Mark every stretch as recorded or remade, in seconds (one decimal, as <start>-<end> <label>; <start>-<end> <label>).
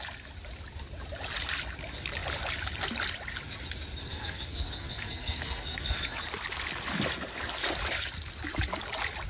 0.0-4.0 recorded; 4.0-6.0 remade; 6.0-9.3 recorded